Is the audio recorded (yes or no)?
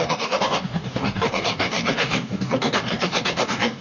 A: no